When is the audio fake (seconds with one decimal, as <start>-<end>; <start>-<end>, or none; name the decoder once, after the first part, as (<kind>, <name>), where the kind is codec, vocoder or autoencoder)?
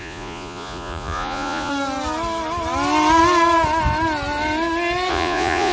0.0-1.7 (vocoder, Vocos); 5.1-5.7